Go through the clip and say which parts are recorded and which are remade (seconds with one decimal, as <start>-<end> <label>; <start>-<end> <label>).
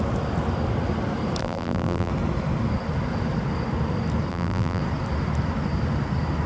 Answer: 0.0-1.4 recorded; 1.4-2.1 remade; 2.1-4.3 recorded; 4.3-4.8 remade; 4.8-6.5 recorded